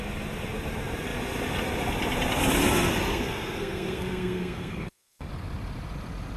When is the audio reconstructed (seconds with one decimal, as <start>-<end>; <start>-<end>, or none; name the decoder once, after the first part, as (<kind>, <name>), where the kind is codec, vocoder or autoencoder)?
3.1-5.3 (codec, SNAC)